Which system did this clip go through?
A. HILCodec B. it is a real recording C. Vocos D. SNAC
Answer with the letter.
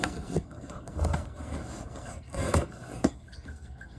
D